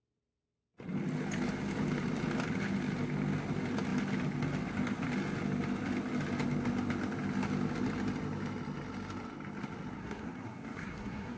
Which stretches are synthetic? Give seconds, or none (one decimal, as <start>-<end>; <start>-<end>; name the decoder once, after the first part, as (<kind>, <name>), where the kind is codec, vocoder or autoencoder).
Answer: 10.0-11.4 (codec, SNAC)